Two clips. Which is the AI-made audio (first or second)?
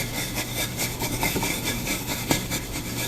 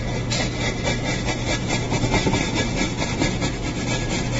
first